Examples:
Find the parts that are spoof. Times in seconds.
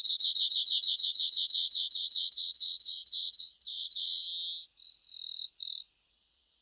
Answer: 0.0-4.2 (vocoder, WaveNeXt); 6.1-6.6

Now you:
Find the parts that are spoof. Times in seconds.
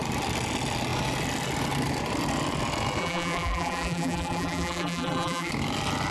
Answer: 3.0-5.5 (vocoder, BigVGAN v2)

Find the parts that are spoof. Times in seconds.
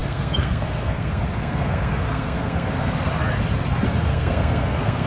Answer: 0.0-3.1 (codec, SNAC); 4.1-5.1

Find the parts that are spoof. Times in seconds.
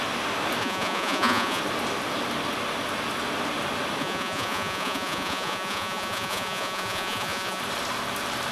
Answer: 0.6-1.6 (vocoder, Vocos); 4.0-7.6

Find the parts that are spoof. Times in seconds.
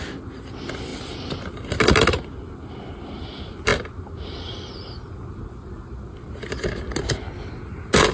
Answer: none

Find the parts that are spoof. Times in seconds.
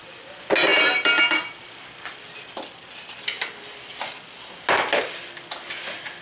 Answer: 0.7-3.1 (vocoder, BigVGAN v2)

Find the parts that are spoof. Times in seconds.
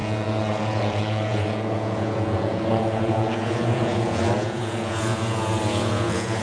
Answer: 0.0-6.4 (vocoder, Vocos)